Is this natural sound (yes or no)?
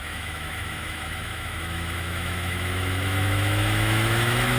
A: no